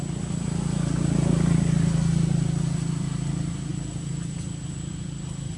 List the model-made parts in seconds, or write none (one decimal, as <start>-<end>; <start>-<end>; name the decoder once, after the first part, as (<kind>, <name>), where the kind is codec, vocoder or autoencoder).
none